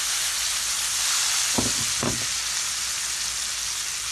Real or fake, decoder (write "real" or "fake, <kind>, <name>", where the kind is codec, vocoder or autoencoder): real